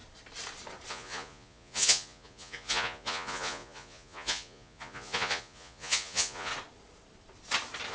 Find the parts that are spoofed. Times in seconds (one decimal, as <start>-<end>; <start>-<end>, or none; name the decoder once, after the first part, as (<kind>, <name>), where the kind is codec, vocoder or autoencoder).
0.9-6.5 (vocoder, Vocos)